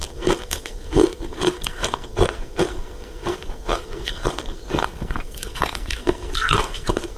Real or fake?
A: fake